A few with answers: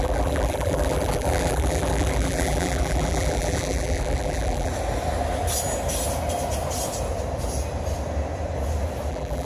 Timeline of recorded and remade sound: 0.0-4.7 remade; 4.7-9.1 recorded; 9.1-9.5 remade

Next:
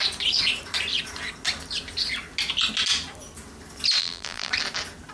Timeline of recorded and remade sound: 0.0-4.0 recorded; 4.0-4.5 remade; 4.5-5.1 recorded

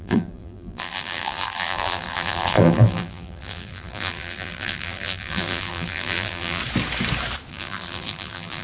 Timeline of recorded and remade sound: 0.0-6.6 remade; 6.6-7.5 recorded; 7.5-8.6 remade

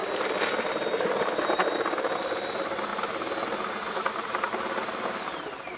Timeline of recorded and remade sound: 0.0-1.0 recorded; 1.0-2.9 remade; 2.9-3.7 recorded; 3.7-5.8 remade

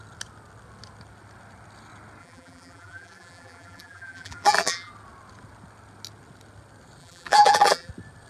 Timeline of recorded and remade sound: 0.0-2.2 recorded; 2.2-4.9 remade; 4.9-7.0 recorded; 7.0-7.9 remade; 7.9-8.3 recorded

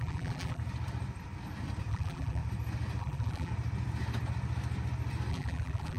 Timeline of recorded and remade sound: 0.0-0.6 remade; 0.6-1.9 recorded; 1.9-2.4 remade; 2.4-3.0 recorded; 3.0-3.5 remade; 3.5-5.3 recorded; 5.3-6.0 remade

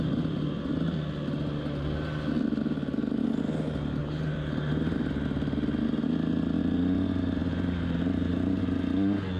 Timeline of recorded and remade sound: 0.0-4.0 recorded; 4.0-5.1 remade; 5.1-7.4 recorded; 7.4-8.6 remade; 8.6-9.4 recorded